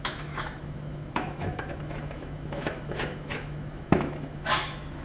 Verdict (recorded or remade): remade